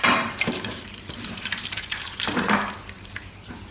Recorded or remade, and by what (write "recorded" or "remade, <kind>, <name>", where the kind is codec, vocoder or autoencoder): remade, vocoder, BigVGAN v2